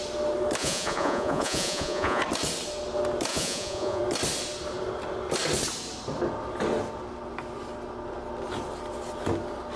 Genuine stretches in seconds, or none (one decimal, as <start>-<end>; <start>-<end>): 0.0-0.6; 2.2-3.3; 4.0-9.8